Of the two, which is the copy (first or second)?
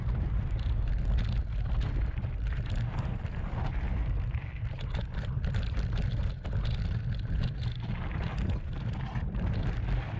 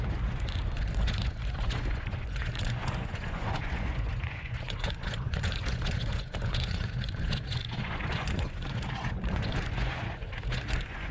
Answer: second